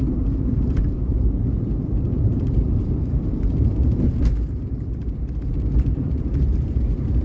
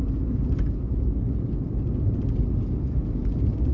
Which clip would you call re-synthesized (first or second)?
first